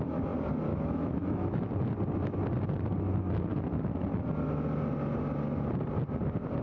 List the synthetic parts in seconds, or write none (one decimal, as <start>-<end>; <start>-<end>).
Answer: 0.7-1.7